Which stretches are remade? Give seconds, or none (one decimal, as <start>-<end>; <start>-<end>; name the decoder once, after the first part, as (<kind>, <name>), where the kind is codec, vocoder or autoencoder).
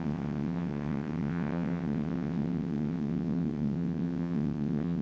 0.0-5.0 (vocoder, WaveNeXt)